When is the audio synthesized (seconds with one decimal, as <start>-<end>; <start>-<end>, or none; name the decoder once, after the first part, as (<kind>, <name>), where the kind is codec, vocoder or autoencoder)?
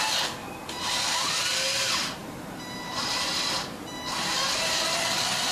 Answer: 2.2-5.0 (vocoder, BigVGAN v2)